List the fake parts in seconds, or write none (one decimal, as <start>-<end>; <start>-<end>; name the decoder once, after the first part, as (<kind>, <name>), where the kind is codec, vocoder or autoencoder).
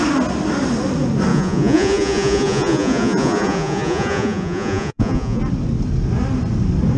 1.3-5.4 (vocoder, Vocos)